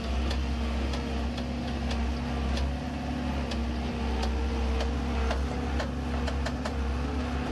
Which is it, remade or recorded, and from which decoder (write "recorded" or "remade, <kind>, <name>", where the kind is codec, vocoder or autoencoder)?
recorded